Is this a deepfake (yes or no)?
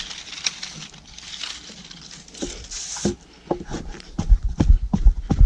no